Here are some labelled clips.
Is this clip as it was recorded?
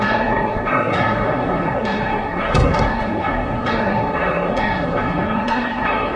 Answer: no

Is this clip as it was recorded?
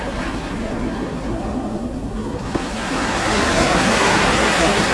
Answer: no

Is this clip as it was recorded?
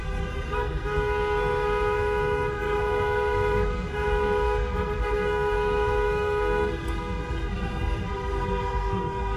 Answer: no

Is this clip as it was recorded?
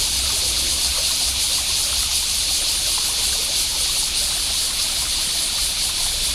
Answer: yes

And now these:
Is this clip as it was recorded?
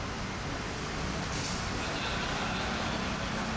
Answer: yes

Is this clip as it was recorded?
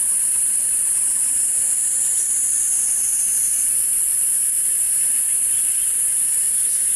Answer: yes